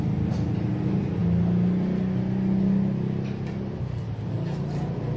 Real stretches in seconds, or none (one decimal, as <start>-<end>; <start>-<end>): 0.0-5.2